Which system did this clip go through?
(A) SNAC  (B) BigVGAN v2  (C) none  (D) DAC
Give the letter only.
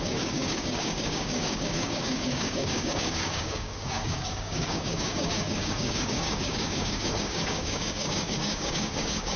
D